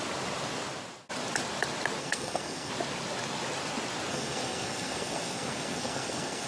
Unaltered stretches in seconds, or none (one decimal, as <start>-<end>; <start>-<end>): 0.0-2.0; 2.7-4.1